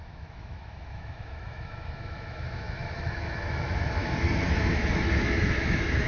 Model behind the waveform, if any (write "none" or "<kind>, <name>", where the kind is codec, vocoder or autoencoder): autoencoder, DAC-VAE